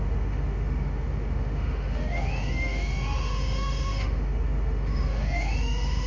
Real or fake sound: fake